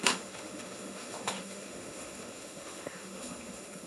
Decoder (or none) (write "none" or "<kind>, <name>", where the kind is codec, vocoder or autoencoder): autoencoder, DAC-VAE